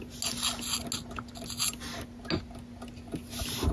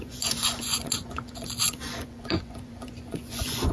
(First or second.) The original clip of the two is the first